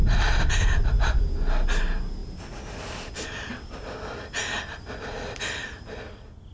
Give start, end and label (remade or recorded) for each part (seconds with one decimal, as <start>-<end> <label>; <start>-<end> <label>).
0.0-1.2 remade; 1.2-6.5 recorded